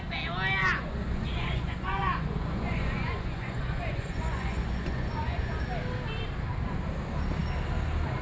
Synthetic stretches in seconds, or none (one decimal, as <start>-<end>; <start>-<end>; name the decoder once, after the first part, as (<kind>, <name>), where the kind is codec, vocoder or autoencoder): 0.6-5.5 (vocoder, Vocos)